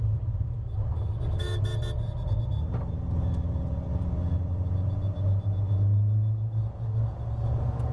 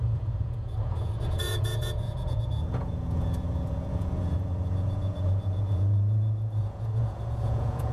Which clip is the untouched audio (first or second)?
first